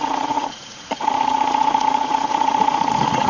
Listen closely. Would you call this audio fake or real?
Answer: fake